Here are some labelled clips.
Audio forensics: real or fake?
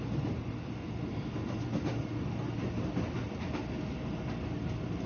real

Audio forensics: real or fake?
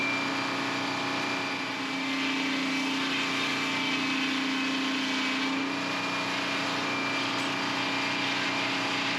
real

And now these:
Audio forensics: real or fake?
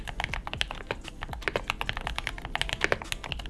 real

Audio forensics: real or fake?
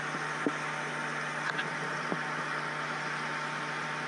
real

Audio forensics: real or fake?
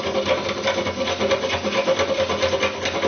real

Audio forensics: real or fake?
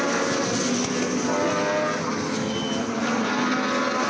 real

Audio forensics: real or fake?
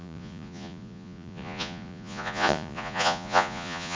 fake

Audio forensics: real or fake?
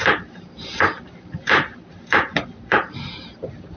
fake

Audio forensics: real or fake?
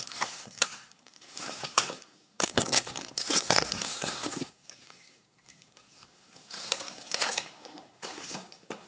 fake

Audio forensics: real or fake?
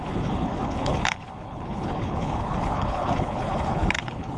fake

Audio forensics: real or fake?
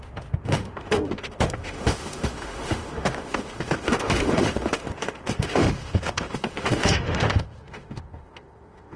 fake